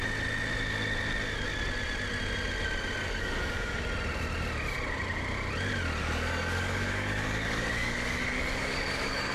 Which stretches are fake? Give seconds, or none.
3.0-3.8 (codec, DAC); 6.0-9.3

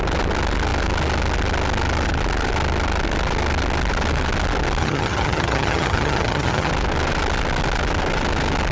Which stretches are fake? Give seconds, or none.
4.8-6.7 (vocoder, HiFi-GAN)

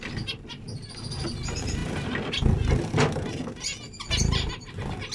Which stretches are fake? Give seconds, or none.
none

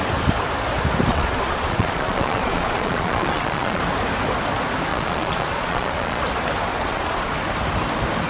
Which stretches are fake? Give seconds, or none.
1.1-3.8 (vocoder, Vocos); 4.9-6.2; 6.7-7.3

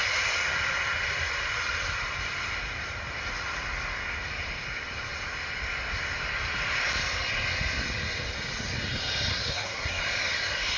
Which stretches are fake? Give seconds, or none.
9.3-10.0 (codec, SNAC)

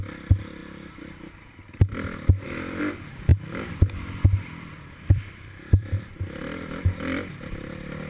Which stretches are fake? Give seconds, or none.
3.3-6.1 (vocoder, BigVGAN v2)

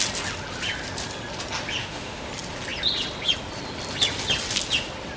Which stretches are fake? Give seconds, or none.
1.8-2.3 (autoencoder, DAC-VAE)